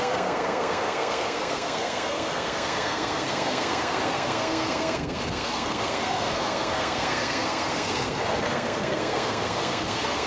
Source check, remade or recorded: remade